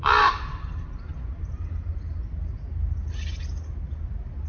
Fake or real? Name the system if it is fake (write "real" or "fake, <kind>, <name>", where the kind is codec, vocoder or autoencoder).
real